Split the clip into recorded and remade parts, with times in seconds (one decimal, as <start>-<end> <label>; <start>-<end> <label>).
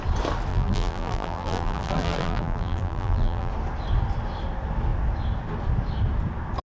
0.0-0.5 recorded; 0.5-3.5 remade; 3.5-6.7 recorded